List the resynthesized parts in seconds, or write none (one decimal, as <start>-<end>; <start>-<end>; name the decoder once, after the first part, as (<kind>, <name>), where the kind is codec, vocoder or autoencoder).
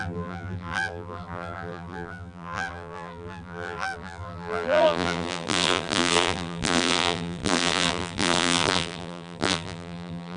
0.0-10.4 (vocoder, BigVGAN v2)